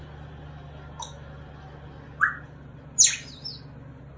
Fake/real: real